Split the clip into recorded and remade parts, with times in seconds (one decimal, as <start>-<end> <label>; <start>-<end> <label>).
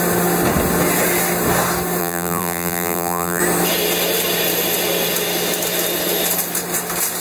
0.0-2.0 recorded; 2.0-3.4 remade; 3.4-7.2 recorded